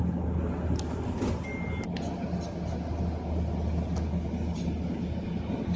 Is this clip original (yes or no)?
yes